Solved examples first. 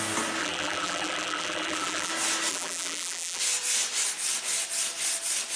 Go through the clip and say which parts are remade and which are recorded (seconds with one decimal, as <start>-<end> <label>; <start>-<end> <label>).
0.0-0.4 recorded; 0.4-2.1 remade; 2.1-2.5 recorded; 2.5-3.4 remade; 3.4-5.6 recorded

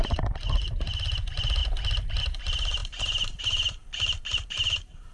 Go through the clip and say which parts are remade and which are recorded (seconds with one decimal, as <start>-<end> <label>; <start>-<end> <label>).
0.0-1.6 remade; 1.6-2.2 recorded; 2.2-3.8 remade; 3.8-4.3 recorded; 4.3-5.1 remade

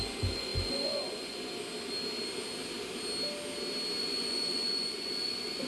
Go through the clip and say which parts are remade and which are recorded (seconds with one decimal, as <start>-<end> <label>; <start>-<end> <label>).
0.0-1.5 remade; 1.5-4.0 recorded; 4.0-5.7 remade